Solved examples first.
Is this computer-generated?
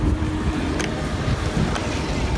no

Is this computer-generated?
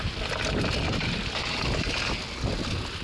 no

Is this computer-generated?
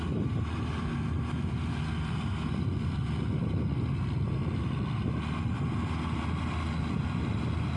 no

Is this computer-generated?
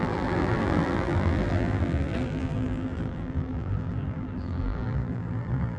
yes